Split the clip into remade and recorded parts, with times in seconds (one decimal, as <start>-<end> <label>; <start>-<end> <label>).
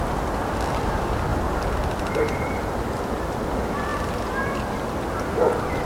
0.0-5.9 recorded